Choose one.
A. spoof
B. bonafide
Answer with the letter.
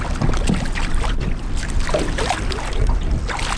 B